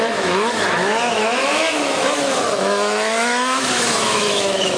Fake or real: fake